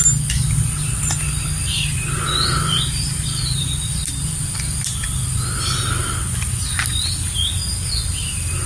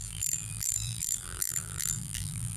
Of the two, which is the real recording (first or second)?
first